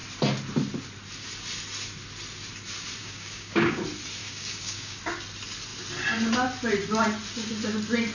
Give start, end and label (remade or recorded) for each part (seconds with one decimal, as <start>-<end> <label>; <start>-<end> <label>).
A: 0.0-3.0 recorded; 3.0-3.8 remade; 3.8-4.2 recorded; 4.2-5.0 remade; 5.0-8.1 recorded

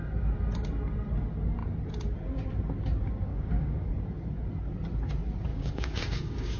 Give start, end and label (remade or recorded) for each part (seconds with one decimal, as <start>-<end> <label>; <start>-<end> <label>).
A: 0.0-3.3 recorded; 3.3-3.9 remade; 3.9-5.5 recorded; 5.5-6.6 remade

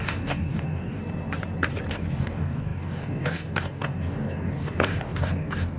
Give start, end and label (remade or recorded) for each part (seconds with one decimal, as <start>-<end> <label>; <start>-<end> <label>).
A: 0.0-1.0 remade; 1.0-1.9 recorded; 1.9-5.8 remade

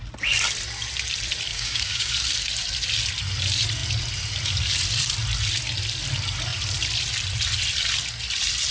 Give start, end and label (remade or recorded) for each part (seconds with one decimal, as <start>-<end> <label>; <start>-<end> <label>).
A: 0.0-1.5 recorded; 1.5-2.1 remade; 2.1-8.7 recorded

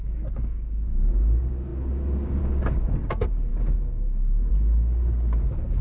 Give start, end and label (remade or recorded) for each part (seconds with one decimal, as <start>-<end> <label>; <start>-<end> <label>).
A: 0.0-5.8 remade

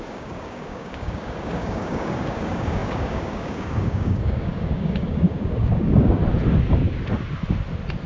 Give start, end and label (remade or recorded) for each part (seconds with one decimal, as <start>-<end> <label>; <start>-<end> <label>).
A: 0.0-6.2 remade; 6.2-8.1 recorded